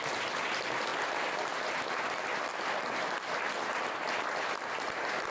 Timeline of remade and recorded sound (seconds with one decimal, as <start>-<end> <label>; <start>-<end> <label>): 0.0-5.3 recorded